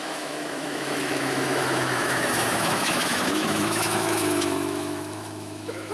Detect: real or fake fake